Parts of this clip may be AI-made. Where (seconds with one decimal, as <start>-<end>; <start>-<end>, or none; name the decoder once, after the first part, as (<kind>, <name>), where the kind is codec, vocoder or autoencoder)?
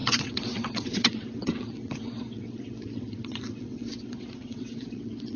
0.0-5.4 (vocoder, WaveNeXt)